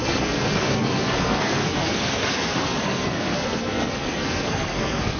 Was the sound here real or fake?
fake